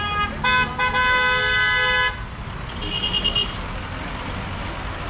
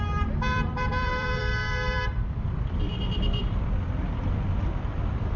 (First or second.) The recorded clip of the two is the first